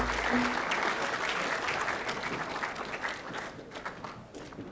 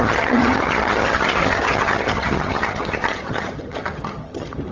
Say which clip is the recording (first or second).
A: first